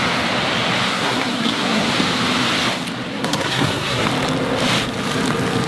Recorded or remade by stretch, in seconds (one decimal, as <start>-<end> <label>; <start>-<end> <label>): 0.0-0.9 recorded; 0.9-1.9 remade; 1.9-3.1 recorded; 3.1-4.1 remade; 4.1-5.7 recorded